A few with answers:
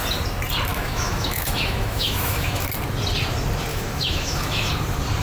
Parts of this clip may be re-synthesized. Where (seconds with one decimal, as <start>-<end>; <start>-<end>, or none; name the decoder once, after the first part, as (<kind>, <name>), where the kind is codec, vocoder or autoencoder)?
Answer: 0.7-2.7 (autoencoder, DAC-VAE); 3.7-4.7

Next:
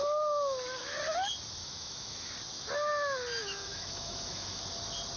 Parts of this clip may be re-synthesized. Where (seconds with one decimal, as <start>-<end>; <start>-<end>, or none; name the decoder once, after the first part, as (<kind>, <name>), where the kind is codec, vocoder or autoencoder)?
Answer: 1.6-2.3 (autoencoder, DAC-VAE); 3.4-4.6

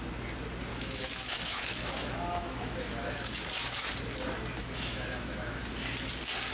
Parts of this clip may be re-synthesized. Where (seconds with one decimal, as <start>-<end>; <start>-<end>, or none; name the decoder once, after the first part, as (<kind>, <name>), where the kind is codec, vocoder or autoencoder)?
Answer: 0.7-3.9 (autoencoder, DAC-VAE); 4.6-5.6

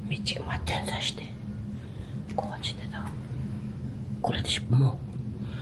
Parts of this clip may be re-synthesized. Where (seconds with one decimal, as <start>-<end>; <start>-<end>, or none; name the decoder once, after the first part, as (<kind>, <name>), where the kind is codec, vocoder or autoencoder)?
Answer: 3.4-4.3 (autoencoder, DAC-VAE)